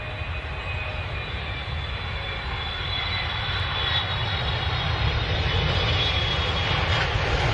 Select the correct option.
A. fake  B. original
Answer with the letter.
B